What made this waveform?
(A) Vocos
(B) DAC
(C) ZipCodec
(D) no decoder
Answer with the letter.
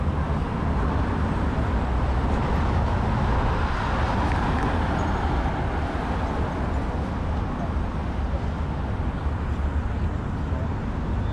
D